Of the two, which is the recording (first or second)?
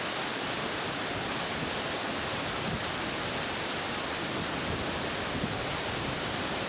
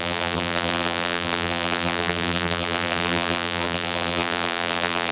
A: first